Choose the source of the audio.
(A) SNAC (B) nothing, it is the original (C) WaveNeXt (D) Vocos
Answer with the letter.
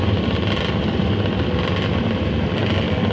B